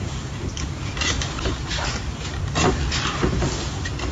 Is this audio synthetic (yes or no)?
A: no